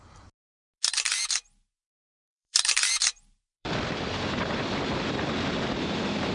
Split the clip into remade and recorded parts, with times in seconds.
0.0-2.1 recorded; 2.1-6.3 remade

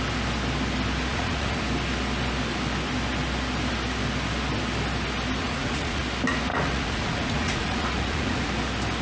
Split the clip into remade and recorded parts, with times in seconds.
0.0-1.1 recorded; 1.1-1.6 remade; 1.6-5.4 recorded; 5.4-6.0 remade; 6.0-6.5 recorded; 6.5-8.5 remade; 8.5-9.0 recorded

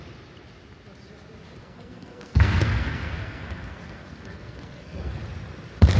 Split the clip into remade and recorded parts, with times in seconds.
0.0-1.6 recorded; 1.6-5.2 remade; 5.2-6.0 recorded

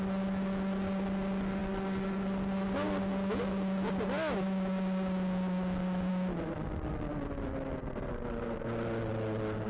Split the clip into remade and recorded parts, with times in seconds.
0.0-9.7 recorded

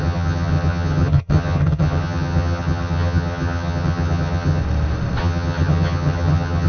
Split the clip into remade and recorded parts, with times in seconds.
0.0-4.6 remade; 4.6-5.2 recorded; 5.2-6.7 remade

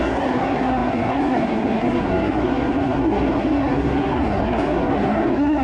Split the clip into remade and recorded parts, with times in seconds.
0.0-5.6 remade

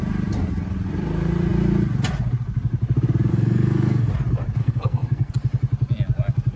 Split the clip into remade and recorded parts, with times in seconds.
0.0-3.3 recorded; 3.3-4.1 remade; 4.1-4.6 recorded; 4.6-5.3 remade; 5.3-6.6 recorded

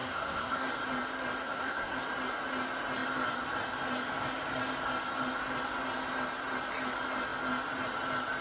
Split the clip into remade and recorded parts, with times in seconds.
0.0-0.7 remade; 0.7-1.4 recorded; 1.4-2.0 remade; 2.0-8.4 recorded